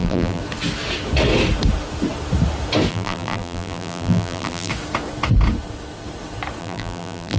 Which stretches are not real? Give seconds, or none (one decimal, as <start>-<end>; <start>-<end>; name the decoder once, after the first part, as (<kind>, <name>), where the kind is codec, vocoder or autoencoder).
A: 0.0-0.4 (vocoder, BigVGAN v2); 2.9-4.7; 6.6-7.4